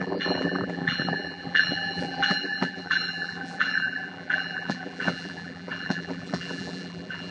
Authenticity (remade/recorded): remade